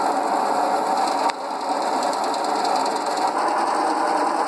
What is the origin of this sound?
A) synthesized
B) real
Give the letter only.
B